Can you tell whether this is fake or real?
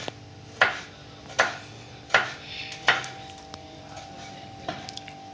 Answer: real